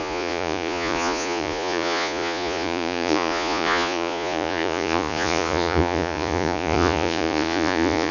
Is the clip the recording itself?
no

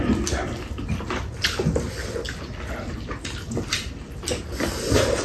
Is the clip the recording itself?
yes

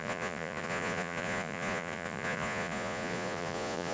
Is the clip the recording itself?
no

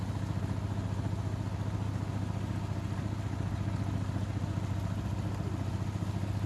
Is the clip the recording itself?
yes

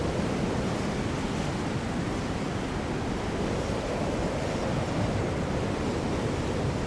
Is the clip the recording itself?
yes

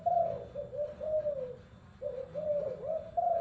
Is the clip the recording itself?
yes